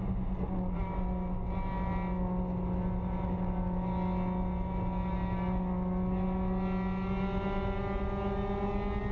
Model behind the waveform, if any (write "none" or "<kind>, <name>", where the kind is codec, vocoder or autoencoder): none